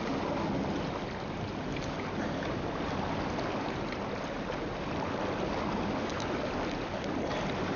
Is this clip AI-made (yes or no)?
no